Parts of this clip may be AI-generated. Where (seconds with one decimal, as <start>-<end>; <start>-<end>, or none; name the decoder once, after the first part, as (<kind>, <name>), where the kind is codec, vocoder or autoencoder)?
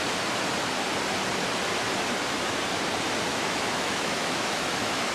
3.3-5.1 (autoencoder, DAC-VAE)